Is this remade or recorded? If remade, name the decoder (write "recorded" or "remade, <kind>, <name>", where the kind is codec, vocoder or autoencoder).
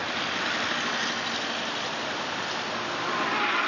recorded